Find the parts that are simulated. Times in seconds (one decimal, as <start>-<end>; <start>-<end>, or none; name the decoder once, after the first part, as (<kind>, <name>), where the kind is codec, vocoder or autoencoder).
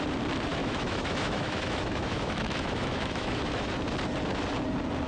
0.6-3.7 (autoencoder, DAC-VAE)